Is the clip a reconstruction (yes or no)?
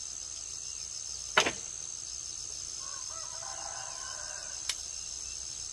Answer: no